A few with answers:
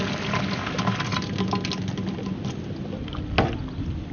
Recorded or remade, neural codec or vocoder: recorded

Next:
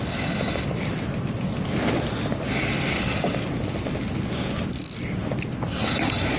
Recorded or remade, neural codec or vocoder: recorded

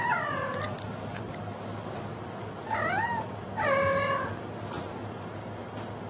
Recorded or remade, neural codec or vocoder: recorded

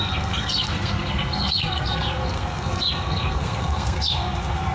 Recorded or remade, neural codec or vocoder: remade, codec, SNAC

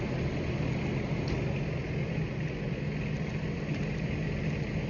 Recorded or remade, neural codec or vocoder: recorded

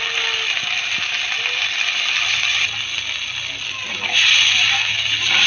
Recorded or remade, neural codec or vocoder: recorded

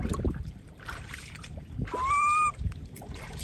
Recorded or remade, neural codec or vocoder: remade, vocoder, BigVGAN v2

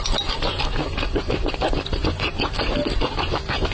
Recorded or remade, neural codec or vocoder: recorded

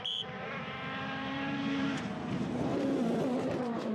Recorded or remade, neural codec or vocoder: remade, vocoder, BigVGAN v2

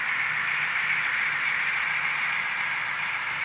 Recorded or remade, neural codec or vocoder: recorded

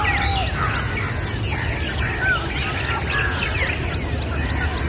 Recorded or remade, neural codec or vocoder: recorded